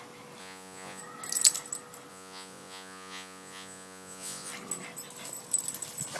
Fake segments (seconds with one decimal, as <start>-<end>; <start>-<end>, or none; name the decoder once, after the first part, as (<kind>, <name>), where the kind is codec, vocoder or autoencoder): 0.4-1.0 (vocoder, Vocos); 2.1-4.5